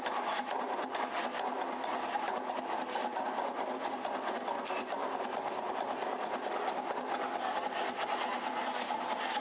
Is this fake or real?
real